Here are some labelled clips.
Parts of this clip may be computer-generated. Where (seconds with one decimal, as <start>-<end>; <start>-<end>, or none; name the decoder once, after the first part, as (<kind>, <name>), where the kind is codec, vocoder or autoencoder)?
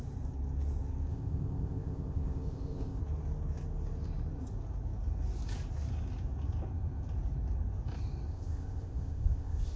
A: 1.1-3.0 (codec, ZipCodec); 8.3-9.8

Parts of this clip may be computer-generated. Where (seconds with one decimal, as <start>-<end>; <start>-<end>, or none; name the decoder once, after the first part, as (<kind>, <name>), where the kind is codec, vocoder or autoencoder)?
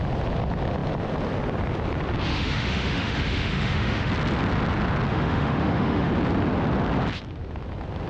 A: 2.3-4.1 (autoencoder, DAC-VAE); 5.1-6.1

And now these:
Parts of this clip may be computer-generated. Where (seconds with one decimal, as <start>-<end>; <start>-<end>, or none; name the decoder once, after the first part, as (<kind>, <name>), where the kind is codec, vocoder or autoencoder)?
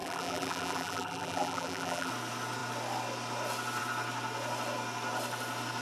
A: 0.0-2.1 (vocoder, BigVGAN v2)